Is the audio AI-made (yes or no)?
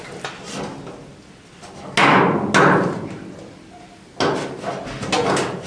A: no